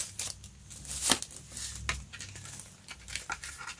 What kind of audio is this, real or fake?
real